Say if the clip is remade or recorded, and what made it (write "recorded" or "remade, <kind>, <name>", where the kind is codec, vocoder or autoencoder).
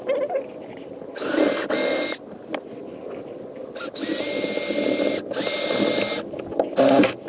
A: recorded